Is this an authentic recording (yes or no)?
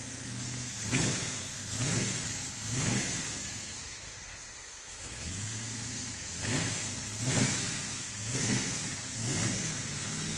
no